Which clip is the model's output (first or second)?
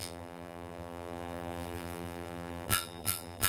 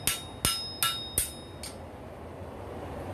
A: first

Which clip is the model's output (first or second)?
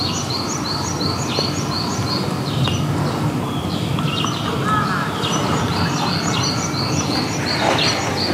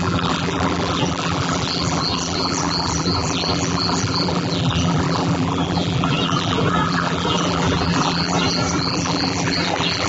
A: second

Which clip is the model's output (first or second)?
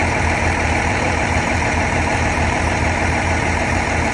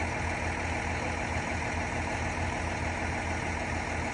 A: first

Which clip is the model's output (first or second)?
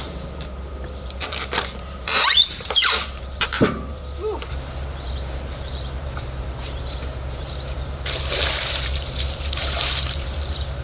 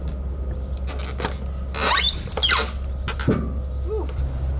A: first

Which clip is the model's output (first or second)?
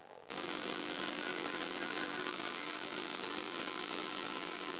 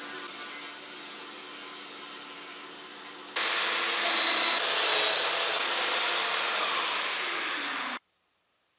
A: first